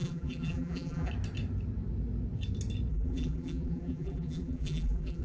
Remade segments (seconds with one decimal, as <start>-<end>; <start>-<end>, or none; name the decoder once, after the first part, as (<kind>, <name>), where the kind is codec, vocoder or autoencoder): 0.0-1.1 (vocoder, BigVGAN v2); 2.9-5.2